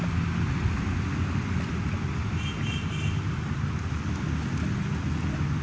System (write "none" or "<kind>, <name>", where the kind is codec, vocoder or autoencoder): none